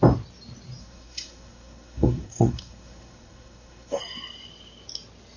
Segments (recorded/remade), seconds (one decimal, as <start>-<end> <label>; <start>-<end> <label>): 0.0-0.8 recorded; 0.8-4.0 remade; 4.0-5.4 recorded